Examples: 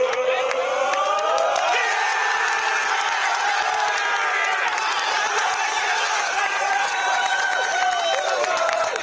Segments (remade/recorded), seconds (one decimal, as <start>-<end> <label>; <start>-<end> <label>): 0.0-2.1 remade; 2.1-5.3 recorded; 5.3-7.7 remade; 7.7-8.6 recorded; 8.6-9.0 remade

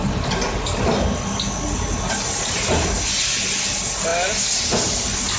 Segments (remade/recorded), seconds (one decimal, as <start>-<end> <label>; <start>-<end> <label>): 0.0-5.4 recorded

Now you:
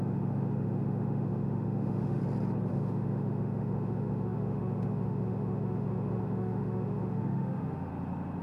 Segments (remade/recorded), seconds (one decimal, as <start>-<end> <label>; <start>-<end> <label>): 0.0-2.2 remade; 2.2-2.7 recorded; 2.7-7.9 remade; 7.9-8.4 recorded